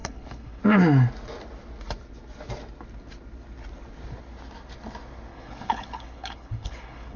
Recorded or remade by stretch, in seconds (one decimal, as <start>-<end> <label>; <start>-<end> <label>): 0.0-0.6 remade; 0.6-5.3 recorded; 5.3-7.2 remade